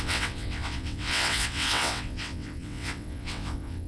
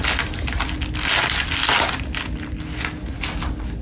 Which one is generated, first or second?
first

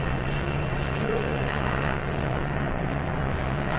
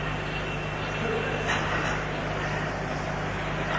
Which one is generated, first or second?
first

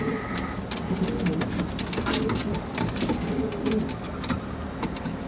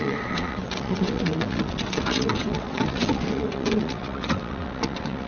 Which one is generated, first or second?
second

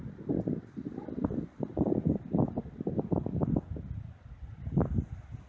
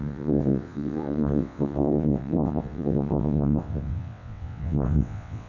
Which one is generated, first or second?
second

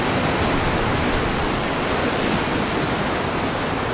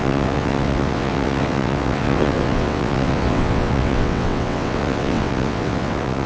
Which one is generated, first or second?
second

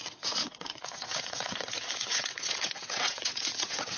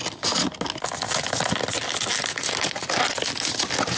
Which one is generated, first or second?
first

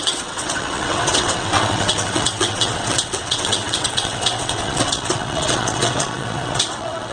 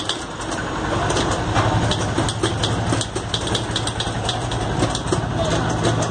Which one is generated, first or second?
first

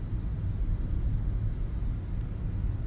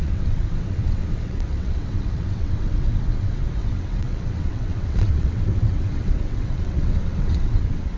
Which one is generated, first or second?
second